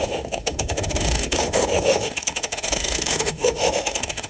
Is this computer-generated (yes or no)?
yes